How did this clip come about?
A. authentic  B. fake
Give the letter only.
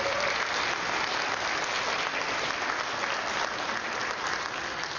A